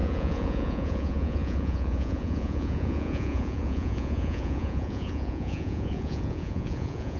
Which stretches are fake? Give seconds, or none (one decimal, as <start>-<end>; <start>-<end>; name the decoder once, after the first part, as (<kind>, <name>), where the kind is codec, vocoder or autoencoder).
0.0-7.2 (vocoder, Vocos)